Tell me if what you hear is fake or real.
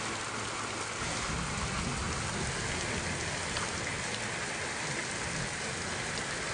real